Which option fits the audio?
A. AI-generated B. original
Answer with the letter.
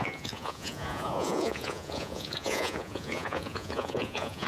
A